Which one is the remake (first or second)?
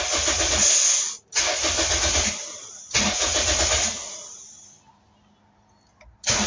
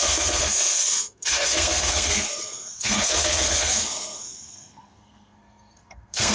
second